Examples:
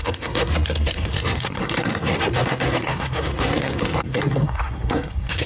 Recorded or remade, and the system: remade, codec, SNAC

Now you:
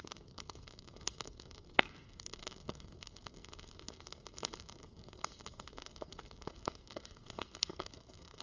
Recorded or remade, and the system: remade, codec, SNAC